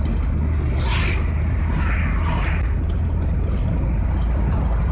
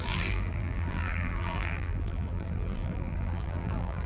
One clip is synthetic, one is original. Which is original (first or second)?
first